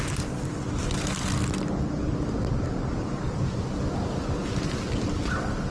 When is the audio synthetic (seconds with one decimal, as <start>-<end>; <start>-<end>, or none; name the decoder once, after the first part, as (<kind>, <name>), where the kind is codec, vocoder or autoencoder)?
none

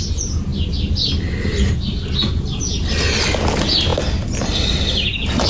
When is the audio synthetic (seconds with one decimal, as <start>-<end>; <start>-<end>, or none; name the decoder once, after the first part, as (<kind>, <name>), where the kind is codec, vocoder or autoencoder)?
none

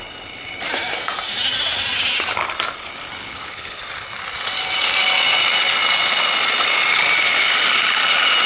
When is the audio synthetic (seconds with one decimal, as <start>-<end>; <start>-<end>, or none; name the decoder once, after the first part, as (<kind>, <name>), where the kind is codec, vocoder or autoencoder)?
3.2-3.8 (codec, HILCodec)

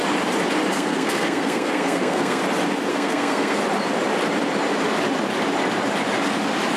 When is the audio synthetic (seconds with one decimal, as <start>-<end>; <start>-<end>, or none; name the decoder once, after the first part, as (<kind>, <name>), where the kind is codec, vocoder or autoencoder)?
0.7-2.4 (codec, SNAC); 2.9-3.6

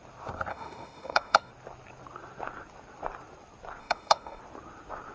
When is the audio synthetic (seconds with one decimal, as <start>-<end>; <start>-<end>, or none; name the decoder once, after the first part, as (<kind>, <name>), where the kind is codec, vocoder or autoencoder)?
0.5-1.5 (autoencoder, DAC-VAE); 3.8-4.4

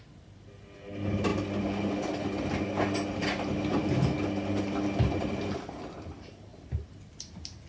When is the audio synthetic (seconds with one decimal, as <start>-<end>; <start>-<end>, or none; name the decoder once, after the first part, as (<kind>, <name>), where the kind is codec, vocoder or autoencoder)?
none

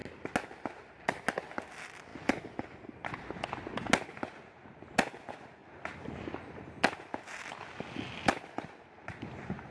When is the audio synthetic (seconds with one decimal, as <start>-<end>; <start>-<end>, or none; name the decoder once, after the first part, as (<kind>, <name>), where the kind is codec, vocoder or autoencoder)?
none